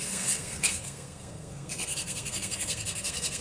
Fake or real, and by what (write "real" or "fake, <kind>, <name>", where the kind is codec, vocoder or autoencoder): fake, codec, SNAC